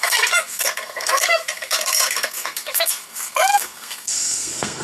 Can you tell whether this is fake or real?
fake